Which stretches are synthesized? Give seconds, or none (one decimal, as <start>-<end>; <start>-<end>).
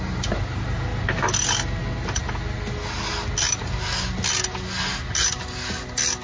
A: none